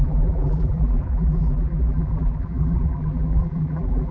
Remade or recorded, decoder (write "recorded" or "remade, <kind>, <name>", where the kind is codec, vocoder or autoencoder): remade, vocoder, BigVGAN v2